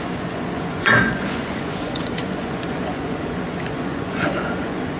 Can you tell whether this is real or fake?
fake